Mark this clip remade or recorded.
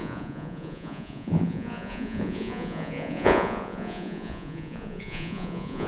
remade